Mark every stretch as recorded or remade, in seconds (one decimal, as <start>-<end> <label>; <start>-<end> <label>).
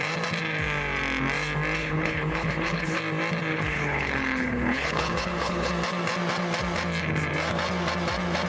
0.0-1.8 recorded; 1.8-3.0 remade; 3.0-3.5 recorded; 3.5-5.7 remade; 5.7-8.5 recorded